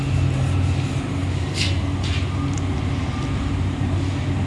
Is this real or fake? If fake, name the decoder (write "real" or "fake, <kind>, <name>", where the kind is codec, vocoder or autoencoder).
real